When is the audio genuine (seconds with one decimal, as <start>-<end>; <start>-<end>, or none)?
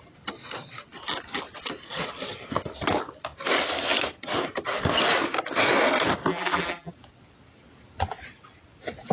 0.0-6.3; 6.9-9.1